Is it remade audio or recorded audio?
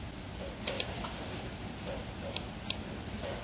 recorded